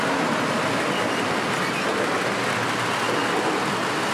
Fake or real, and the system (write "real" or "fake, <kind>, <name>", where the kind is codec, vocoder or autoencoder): real